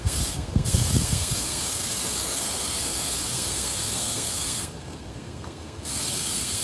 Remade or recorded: remade